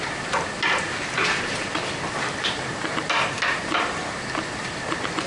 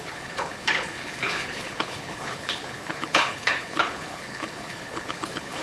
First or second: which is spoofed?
second